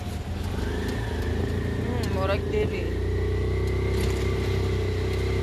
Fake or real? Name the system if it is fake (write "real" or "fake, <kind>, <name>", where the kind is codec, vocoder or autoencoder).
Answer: real